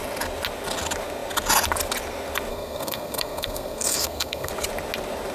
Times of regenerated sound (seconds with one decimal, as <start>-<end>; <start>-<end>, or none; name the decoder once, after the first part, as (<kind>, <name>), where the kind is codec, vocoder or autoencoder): 2.5-4.5 (codec, SNAC)